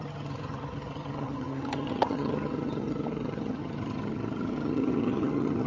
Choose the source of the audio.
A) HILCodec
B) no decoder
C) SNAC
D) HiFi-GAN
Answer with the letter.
D